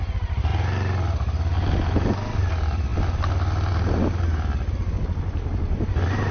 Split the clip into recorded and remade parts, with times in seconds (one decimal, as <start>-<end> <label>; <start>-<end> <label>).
0.0-6.3 recorded